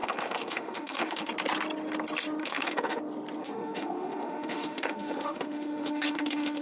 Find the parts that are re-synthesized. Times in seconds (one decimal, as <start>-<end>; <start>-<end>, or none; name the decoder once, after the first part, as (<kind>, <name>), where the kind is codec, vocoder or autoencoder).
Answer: 0.0-1.3 (autoencoder, DAC-VAE); 2.4-3.0; 3.4-6.6